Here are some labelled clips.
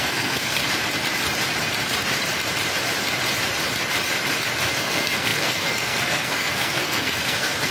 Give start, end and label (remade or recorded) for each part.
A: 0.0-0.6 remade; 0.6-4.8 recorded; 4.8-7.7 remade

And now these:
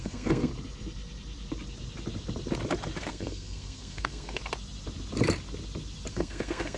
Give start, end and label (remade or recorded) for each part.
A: 0.0-0.5 remade; 0.5-3.0 recorded; 3.0-4.4 remade; 4.4-6.1 recorded; 6.1-6.8 remade